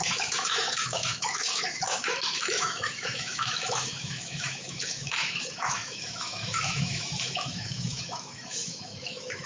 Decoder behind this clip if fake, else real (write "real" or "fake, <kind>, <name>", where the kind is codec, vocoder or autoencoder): fake, autoencoder, DAC-VAE